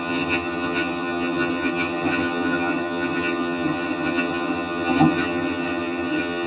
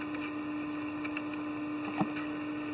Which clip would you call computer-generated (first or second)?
first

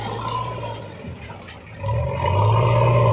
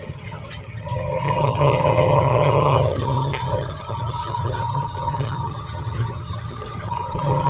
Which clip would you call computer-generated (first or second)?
second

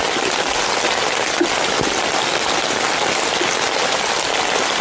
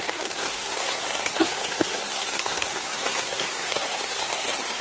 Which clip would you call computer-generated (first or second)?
second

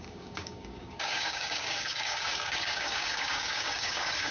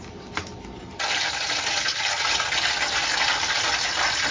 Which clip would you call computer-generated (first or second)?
first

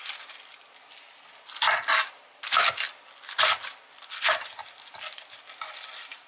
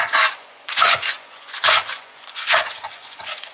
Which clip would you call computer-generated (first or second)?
second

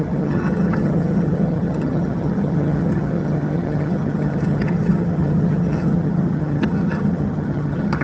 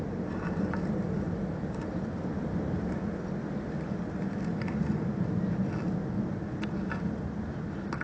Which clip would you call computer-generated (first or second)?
first